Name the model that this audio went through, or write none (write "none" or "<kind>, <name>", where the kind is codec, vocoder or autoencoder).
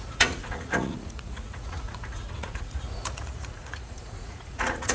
vocoder, Vocos